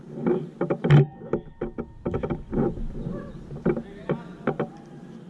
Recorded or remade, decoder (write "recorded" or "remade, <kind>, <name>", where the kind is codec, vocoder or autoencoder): recorded